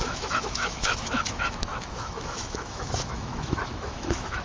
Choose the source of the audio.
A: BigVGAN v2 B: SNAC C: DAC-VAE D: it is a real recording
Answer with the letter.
C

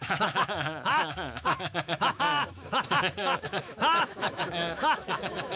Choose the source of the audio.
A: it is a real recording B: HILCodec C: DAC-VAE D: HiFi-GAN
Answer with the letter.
C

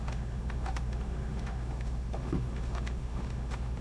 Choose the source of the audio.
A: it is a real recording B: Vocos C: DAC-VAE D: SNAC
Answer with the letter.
C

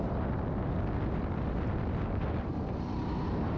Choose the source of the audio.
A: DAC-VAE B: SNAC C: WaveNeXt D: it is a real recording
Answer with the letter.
D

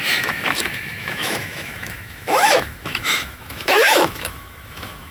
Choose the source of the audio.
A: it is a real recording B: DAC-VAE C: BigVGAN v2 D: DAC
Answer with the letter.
B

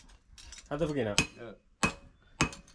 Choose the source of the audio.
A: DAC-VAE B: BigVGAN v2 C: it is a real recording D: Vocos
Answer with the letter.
C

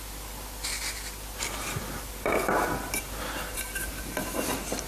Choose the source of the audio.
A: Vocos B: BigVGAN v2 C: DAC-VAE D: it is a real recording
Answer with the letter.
D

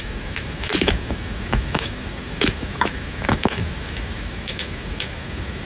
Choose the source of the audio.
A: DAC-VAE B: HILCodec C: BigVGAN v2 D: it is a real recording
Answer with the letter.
A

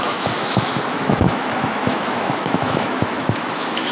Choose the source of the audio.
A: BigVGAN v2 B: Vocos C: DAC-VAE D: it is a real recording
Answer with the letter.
C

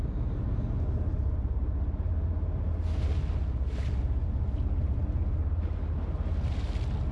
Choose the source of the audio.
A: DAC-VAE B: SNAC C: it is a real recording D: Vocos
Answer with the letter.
C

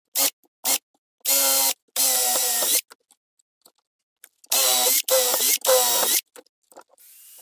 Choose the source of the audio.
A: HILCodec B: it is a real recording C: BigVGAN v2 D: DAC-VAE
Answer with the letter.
B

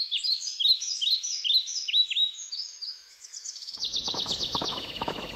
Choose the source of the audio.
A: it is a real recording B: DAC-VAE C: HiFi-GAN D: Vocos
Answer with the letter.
B